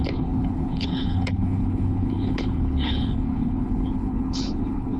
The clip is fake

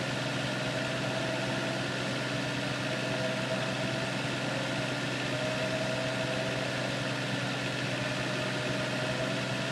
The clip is real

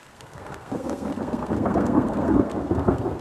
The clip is fake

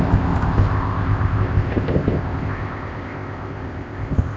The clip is fake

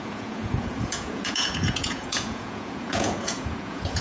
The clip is fake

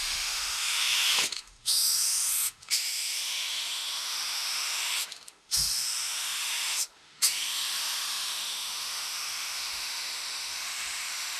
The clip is fake